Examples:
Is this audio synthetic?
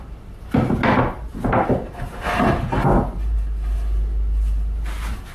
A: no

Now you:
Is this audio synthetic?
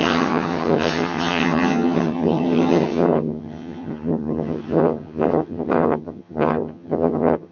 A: yes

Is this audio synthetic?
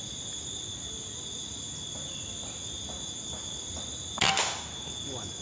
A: no